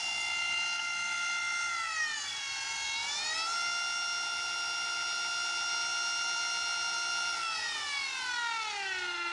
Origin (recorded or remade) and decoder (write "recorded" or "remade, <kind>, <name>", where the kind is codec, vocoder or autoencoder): recorded